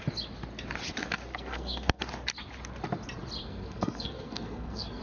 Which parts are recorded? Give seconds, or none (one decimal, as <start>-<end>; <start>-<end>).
0.0-1.3; 2.0-3.4